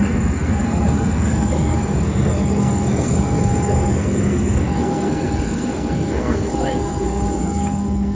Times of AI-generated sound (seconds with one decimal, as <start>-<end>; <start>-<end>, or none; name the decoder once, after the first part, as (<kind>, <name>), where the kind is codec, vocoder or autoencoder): 0.0-8.1 (codec, SNAC)